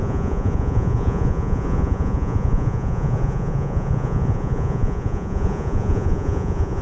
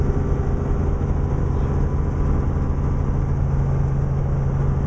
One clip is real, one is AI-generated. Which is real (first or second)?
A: second